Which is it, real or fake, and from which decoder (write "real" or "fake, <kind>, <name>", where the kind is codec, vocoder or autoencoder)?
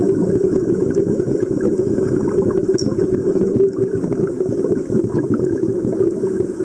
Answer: fake, autoencoder, DAC-VAE